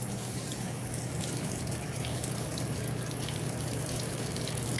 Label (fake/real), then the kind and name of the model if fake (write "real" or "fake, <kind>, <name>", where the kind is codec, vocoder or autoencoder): fake, codec, DAC